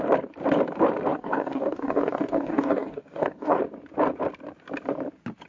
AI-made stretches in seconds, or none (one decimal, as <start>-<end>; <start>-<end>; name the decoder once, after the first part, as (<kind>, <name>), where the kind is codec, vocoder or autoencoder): 1.1-3.6 (codec, DAC)